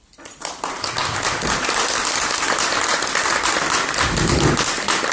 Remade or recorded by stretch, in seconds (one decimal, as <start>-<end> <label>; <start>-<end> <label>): 0.0-5.1 recorded